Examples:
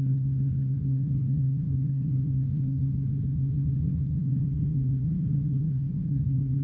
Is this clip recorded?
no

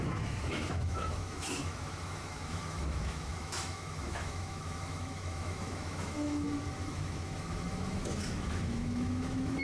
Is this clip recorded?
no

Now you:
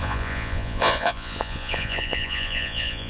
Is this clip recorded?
no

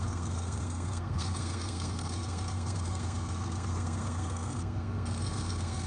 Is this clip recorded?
no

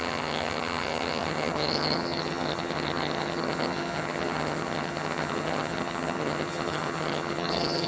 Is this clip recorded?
no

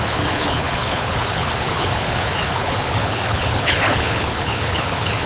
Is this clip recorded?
no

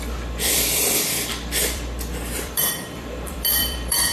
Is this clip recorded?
no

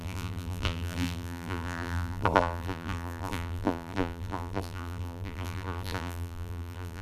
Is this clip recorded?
no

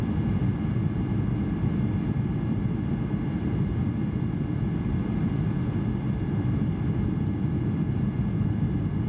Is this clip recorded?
no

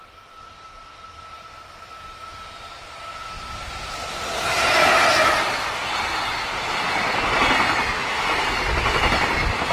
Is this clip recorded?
yes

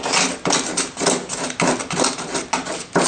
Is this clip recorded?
yes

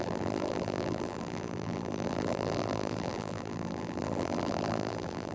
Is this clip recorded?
no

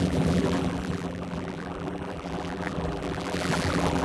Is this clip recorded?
no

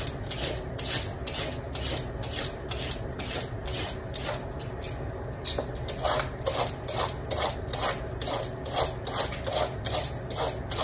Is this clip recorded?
yes